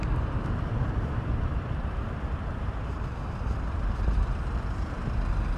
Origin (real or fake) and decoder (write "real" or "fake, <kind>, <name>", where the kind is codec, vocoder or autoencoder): fake, vocoder, BigVGAN v2